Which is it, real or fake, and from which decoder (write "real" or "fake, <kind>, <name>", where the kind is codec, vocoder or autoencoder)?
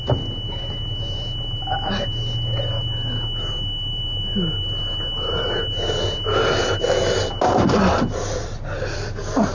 real